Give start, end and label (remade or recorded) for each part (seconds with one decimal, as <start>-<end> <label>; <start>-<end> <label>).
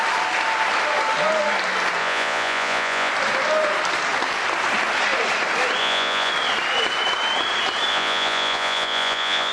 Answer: 0.0-2.0 recorded; 2.0-3.1 remade; 3.1-5.8 recorded; 5.8-6.3 remade; 6.3-7.9 recorded; 7.9-9.5 remade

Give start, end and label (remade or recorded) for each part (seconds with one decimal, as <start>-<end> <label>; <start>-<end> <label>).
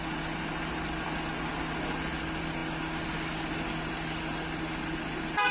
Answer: 0.0-5.5 recorded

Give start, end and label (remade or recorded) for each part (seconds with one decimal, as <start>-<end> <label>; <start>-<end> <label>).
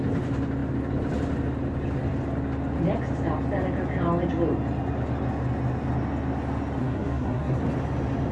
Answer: 0.0-6.8 recorded; 6.8-7.6 remade; 7.6-8.3 recorded